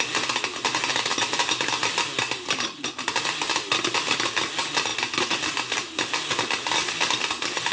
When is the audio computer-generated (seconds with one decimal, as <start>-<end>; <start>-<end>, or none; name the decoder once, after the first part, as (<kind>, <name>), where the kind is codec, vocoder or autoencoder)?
none